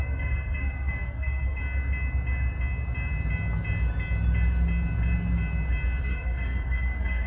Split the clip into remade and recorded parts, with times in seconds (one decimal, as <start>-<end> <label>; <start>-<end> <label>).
0.0-1.6 remade; 1.6-6.0 recorded; 6.0-7.3 remade